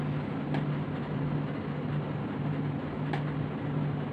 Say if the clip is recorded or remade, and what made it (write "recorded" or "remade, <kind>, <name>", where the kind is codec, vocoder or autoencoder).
recorded